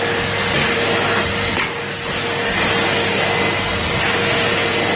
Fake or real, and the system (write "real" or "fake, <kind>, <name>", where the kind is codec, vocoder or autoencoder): real